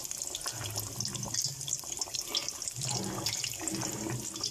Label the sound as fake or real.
real